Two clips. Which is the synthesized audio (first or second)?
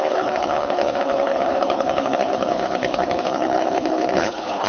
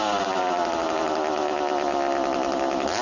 first